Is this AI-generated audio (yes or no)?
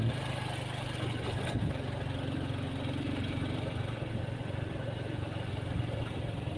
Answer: no